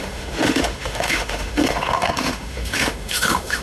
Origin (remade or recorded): remade